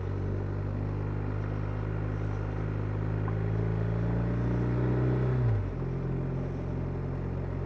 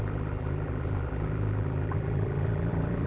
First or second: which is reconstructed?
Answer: second